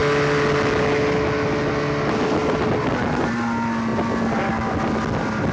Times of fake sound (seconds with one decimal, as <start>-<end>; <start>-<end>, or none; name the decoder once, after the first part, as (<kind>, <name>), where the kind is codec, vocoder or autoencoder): none